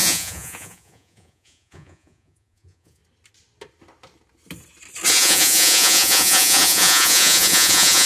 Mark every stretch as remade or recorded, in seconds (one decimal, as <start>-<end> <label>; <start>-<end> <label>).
0.0-3.0 remade; 3.0-5.1 recorded; 5.1-8.1 remade